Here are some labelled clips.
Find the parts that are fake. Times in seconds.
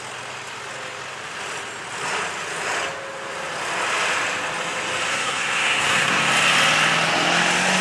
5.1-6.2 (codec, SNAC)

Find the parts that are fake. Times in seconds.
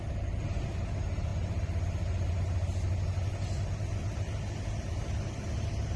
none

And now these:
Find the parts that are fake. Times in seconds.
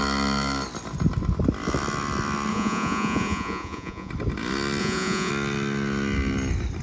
2.5-4.1 (vocoder, Vocos); 4.8-5.3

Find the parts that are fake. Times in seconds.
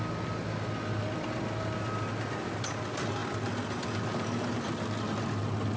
none